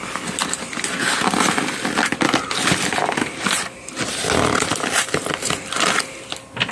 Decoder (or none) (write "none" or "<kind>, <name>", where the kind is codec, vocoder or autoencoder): none